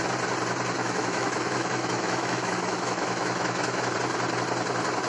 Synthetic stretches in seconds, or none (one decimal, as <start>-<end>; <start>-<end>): 0.8-3.9